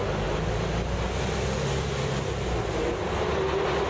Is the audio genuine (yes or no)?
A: yes